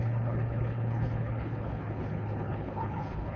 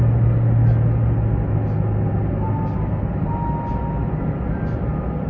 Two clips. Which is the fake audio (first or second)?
first